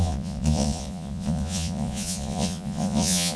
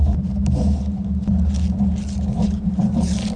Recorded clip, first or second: second